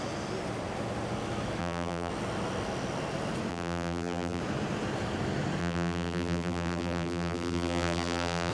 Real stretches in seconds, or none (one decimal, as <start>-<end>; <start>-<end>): 0.0-1.6; 2.1-3.5; 4.4-5.6